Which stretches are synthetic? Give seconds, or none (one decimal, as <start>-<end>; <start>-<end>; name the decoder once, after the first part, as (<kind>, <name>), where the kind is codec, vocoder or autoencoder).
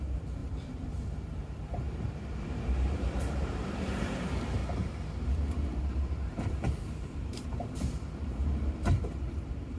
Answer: 0.0-4.6 (vocoder, BigVGAN v2); 5.1-9.8